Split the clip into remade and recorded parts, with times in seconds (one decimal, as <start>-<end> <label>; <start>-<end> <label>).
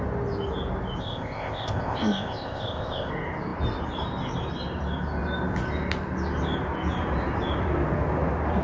0.0-1.0 recorded; 1.0-3.1 remade; 3.1-8.6 recorded